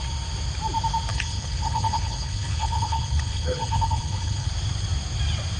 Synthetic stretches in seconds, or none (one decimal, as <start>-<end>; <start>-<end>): 1.1-4.5